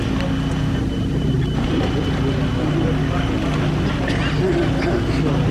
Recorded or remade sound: recorded